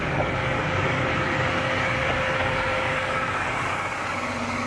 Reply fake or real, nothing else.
fake